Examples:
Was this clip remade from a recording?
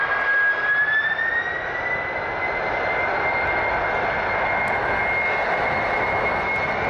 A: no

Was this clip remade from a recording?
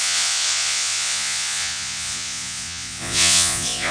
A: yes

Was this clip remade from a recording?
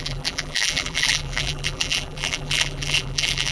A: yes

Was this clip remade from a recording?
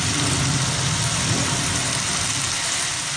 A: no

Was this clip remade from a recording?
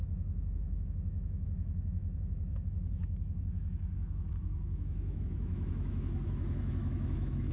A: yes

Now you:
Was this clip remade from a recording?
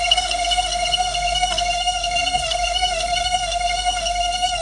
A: yes